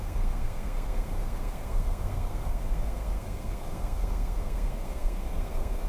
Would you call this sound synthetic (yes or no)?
yes